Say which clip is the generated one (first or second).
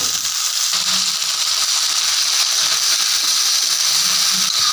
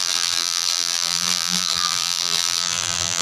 second